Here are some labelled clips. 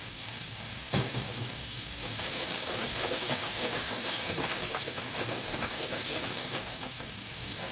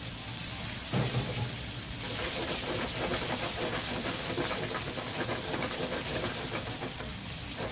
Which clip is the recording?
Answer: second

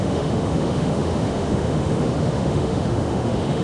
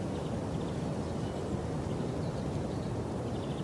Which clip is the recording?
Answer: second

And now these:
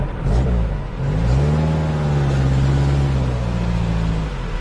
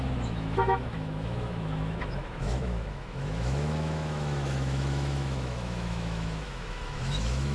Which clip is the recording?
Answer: first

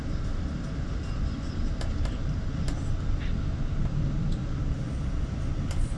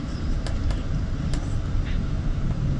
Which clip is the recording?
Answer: first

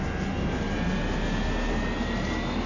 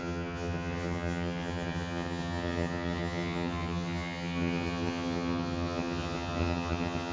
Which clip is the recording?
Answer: first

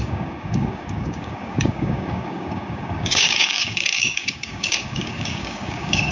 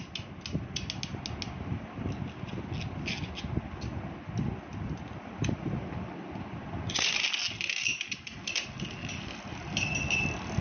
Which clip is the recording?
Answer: second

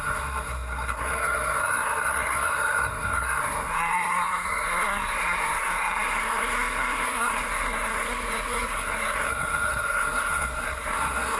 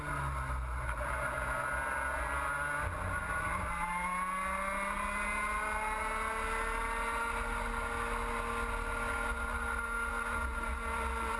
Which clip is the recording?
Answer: second